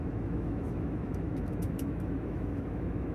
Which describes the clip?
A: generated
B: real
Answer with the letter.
A